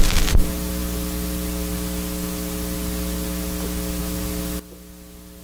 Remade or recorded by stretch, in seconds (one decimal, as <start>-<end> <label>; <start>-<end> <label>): 0.0-5.4 recorded